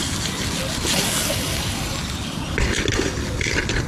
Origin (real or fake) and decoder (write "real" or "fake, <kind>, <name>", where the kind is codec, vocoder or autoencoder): real